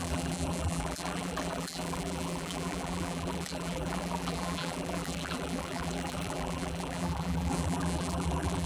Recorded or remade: remade